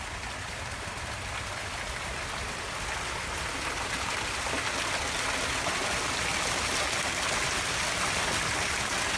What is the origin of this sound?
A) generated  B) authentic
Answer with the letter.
B